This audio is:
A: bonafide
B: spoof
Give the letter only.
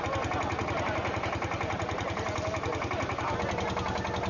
A